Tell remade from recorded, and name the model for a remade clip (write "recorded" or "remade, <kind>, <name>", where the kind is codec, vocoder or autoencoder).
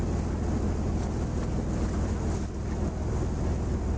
recorded